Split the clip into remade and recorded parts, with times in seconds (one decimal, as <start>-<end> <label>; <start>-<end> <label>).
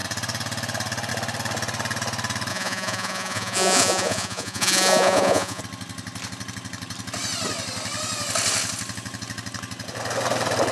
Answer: 0.0-2.5 recorded; 2.5-5.6 remade; 5.6-10.7 recorded